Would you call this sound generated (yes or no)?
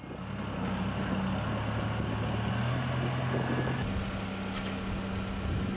no